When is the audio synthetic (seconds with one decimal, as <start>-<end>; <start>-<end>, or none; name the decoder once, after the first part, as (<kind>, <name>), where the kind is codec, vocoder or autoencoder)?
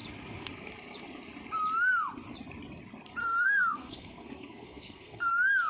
3.2-5.3 (codec, SNAC)